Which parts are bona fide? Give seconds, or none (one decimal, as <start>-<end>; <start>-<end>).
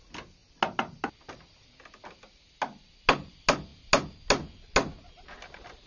0.0-5.9